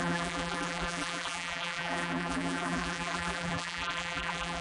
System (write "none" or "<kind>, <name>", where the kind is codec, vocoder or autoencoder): vocoder, BigVGAN v2